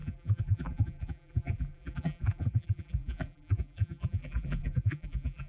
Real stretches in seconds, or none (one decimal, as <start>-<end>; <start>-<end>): none